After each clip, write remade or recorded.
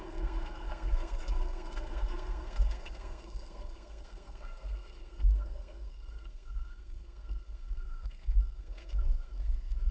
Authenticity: remade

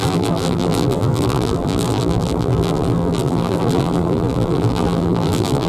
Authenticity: remade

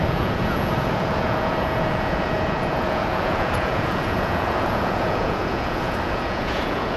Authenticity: remade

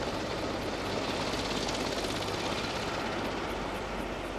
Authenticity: recorded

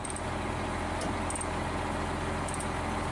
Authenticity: recorded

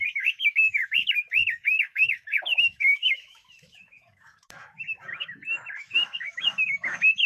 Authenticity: remade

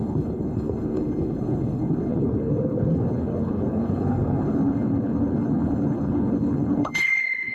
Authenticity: remade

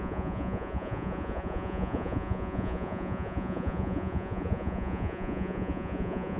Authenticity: remade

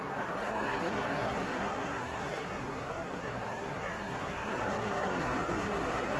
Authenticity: remade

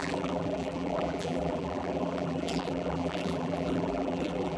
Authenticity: remade